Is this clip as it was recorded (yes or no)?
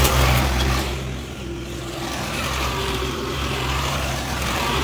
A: no